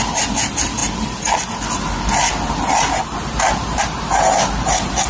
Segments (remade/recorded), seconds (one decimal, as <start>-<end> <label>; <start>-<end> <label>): 0.0-5.1 recorded